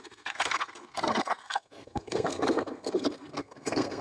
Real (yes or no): no